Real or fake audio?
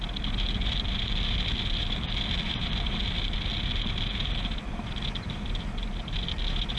real